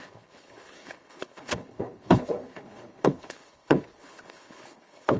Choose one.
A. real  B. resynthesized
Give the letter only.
B